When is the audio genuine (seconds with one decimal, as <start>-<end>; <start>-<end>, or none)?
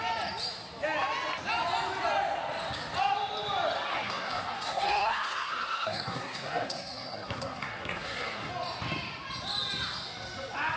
0.0-3.9; 8.5-10.8